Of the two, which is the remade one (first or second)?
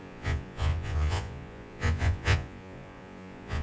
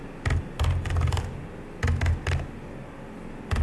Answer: first